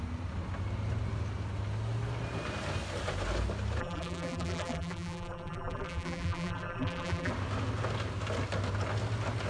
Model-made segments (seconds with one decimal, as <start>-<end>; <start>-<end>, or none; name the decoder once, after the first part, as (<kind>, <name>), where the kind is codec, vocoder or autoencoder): 3.8-7.3 (vocoder, BigVGAN v2)